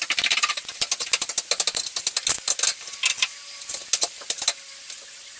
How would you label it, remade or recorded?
recorded